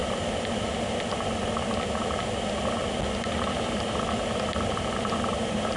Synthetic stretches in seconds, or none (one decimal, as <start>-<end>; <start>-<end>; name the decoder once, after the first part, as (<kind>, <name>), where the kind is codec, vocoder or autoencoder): 3.5-5.8 (vocoder, BigVGAN v2)